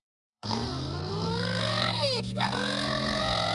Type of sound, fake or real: fake